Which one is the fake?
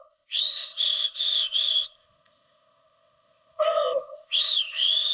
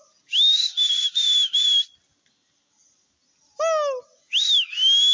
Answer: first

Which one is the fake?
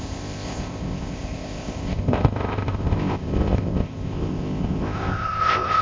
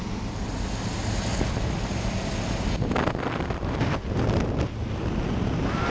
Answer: first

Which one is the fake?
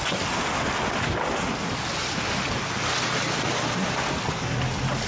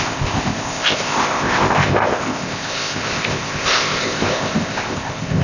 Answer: second